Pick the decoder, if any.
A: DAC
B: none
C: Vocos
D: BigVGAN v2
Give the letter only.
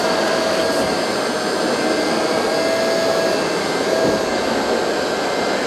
B